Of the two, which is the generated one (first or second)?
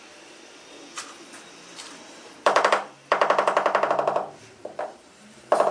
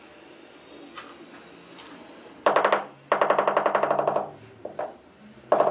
first